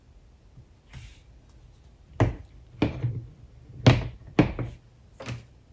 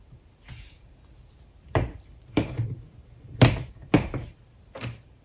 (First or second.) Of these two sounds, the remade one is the second